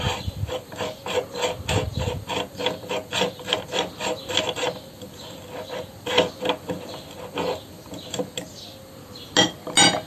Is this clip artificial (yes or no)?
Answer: no